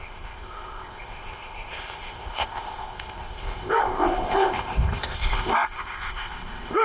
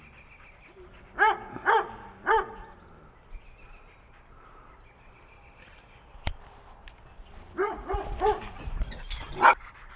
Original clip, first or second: second